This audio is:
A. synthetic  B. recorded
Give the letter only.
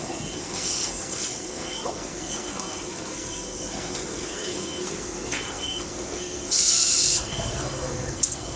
A